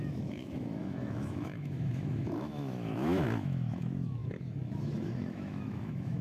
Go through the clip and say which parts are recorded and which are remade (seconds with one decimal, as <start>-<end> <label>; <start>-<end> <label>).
0.0-6.2 remade